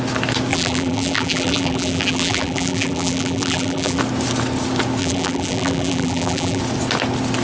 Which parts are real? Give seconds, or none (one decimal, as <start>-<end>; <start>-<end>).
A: 0.0-0.5; 4.0-5.0; 6.6-7.4